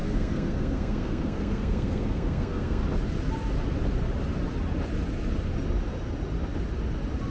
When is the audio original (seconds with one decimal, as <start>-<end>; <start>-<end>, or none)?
2.8-7.3